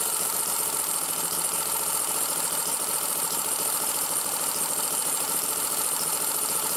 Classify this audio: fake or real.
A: real